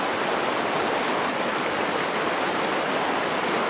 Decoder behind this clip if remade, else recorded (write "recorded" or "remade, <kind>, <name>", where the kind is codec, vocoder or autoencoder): recorded